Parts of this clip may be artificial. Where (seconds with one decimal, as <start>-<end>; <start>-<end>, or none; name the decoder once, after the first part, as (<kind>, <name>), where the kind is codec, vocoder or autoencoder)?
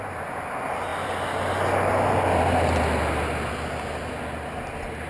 none